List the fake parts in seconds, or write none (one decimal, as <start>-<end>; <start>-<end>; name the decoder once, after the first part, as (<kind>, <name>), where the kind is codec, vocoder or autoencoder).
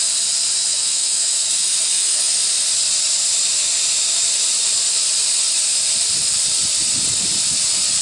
0.7-2.3 (autoencoder, DAC-VAE)